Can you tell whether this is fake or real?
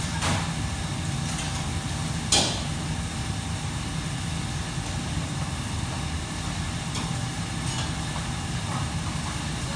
real